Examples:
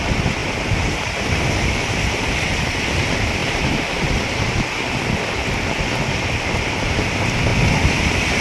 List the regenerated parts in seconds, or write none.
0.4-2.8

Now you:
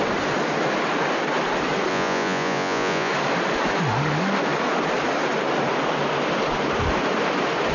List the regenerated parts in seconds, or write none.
1.9-3.1